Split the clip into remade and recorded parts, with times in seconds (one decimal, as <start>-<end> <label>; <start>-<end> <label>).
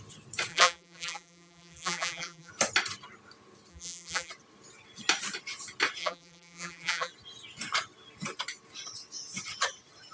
0.0-0.5 recorded; 0.5-2.5 remade; 2.5-3.7 recorded; 3.7-4.3 remade; 4.3-6.0 recorded; 6.0-7.1 remade; 7.1-10.1 recorded